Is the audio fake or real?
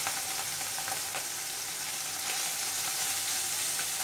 real